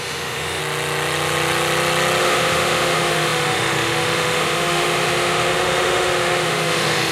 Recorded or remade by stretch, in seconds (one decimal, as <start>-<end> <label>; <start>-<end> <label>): 0.0-0.6 remade; 0.6-2.2 recorded; 2.2-7.1 remade